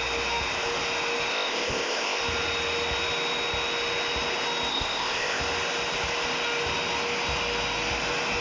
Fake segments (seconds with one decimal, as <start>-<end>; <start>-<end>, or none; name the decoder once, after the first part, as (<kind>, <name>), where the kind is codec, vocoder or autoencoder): 1.3-2.2 (codec, ZipCodec); 4.7-5.4